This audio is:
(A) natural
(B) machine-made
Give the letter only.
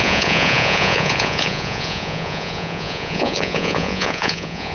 B